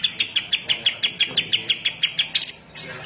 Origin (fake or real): real